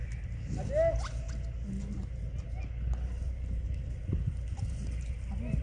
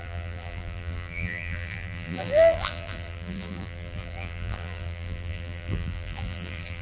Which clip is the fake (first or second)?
second